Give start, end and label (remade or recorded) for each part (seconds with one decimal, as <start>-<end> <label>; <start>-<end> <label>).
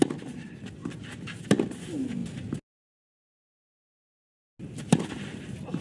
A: 0.0-5.8 recorded